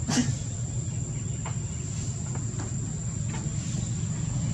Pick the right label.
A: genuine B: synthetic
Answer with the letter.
A